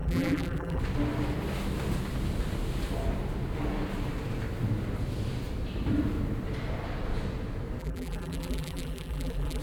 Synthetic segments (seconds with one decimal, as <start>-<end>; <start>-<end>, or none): 0.0-0.8; 7.8-9.6